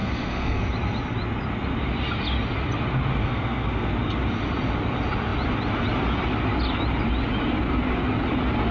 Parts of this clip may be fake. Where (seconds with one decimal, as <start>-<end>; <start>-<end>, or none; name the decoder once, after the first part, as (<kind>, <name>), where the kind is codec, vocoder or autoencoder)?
0.0-0.6 (codec, SNAC); 3.2-3.9